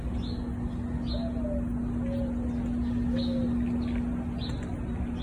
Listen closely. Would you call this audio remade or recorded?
recorded